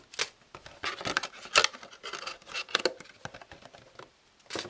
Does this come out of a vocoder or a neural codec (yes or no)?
no